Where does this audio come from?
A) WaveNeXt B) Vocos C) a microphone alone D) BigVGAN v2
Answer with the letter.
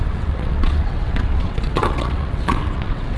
A